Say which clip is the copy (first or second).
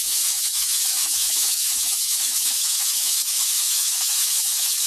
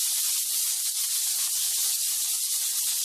first